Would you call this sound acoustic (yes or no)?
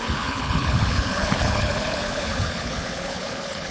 no